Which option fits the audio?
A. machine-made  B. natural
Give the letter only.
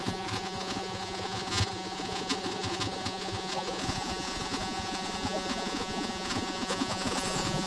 A